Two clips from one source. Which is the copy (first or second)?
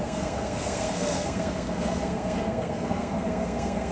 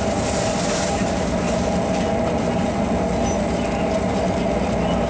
first